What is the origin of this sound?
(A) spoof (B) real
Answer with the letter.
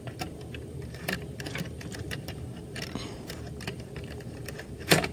A